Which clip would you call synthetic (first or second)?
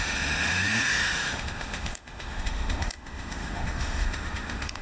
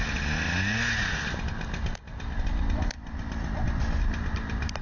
first